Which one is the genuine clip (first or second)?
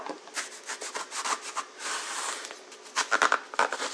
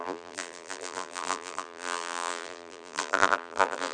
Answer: first